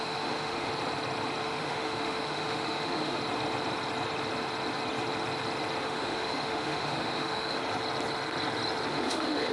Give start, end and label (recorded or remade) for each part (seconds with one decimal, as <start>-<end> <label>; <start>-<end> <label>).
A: 0.0-0.7 remade; 0.7-1.4 recorded; 1.4-3.2 remade; 3.2-5.8 recorded; 5.8-7.6 remade; 7.6-8.9 recorded; 8.9-9.5 remade